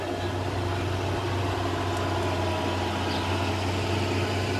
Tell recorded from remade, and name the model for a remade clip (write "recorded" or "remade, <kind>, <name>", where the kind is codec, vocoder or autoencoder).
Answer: recorded